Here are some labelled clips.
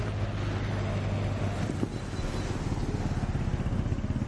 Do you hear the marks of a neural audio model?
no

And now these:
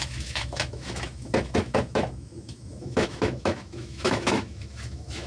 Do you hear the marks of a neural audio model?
yes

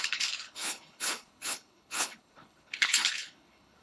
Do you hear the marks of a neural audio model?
yes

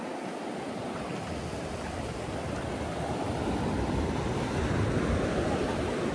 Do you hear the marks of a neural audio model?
no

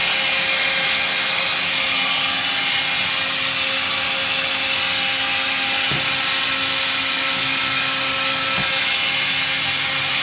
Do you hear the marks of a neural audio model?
no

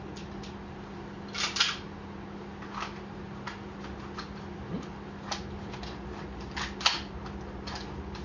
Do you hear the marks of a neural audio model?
no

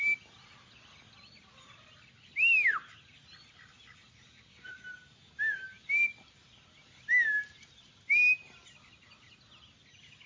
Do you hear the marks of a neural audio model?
no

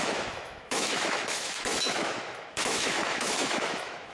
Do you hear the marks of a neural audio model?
yes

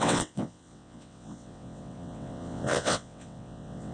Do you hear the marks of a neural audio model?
yes